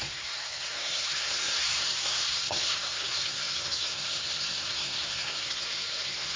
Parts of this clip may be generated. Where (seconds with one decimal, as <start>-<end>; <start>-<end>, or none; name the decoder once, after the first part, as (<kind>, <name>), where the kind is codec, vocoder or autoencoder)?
0.0-6.4 (codec, SNAC)